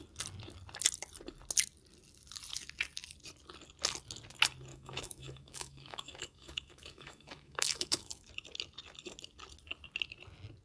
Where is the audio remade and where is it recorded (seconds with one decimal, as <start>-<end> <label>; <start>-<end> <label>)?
0.0-4.7 recorded; 4.7-8.3 remade; 8.3-10.6 recorded